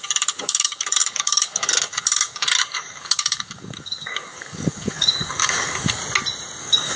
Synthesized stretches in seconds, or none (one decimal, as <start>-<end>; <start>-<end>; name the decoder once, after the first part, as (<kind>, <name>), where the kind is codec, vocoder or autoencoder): 0.0-6.0 (codec, DAC); 6.6-7.0